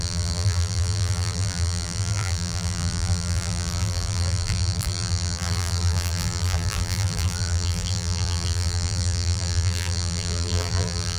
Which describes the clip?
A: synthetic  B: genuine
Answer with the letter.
A